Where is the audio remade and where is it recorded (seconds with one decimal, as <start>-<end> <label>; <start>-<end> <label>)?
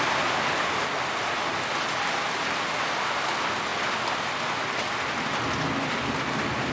0.0-6.7 recorded